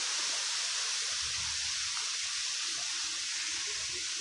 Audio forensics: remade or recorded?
recorded